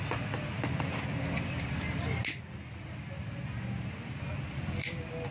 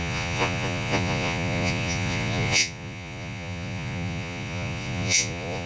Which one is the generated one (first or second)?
second